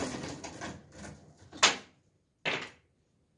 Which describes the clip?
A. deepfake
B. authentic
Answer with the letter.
B